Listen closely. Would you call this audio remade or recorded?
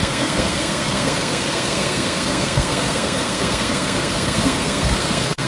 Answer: remade